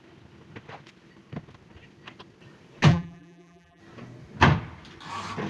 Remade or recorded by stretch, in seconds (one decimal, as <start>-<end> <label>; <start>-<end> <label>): 0.0-2.9 recorded; 2.9-3.8 remade; 3.8-5.5 recorded